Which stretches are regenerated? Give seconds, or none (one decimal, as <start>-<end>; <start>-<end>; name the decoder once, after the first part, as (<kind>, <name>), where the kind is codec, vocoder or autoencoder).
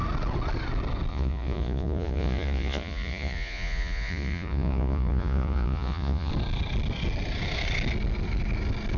1.1-6.3 (vocoder, Vocos)